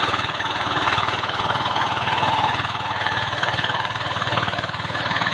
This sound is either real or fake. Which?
fake